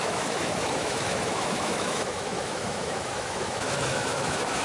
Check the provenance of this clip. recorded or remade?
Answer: remade